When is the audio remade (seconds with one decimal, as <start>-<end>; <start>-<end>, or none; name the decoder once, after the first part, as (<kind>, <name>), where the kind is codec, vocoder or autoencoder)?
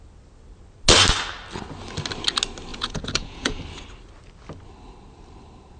2.7-3.6 (vocoder, Vocos)